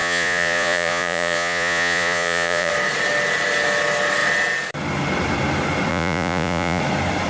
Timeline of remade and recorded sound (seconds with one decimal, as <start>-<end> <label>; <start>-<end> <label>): 0.0-2.7 remade; 2.7-5.9 recorded; 5.9-6.8 remade; 6.8-7.3 recorded